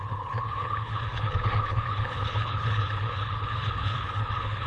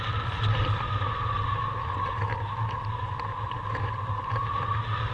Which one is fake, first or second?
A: first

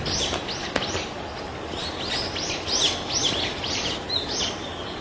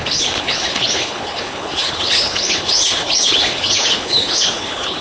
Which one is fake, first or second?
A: second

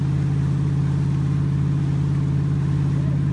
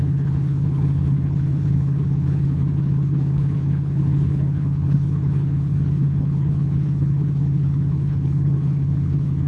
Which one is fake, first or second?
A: second